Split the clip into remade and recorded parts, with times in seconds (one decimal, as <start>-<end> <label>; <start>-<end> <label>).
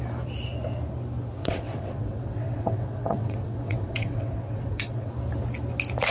0.0-1.4 recorded; 1.4-5.1 remade; 5.1-6.1 recorded